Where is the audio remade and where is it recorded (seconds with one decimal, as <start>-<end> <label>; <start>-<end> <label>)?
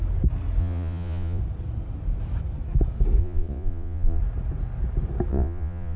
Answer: 0.0-0.6 recorded; 0.6-1.4 remade; 1.4-3.2 recorded; 3.2-4.2 remade; 4.2-5.3 recorded; 5.3-6.0 remade